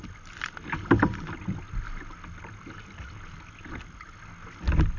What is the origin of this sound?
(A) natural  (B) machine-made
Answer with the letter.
A